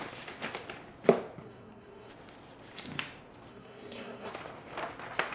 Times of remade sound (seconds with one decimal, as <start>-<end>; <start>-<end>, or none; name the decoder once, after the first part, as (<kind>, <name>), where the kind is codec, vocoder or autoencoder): 1.4-2.1 (codec, SNAC); 3.5-4.3